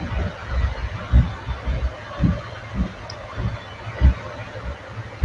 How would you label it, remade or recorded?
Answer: recorded